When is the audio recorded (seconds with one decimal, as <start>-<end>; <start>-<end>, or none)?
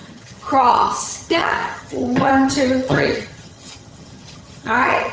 none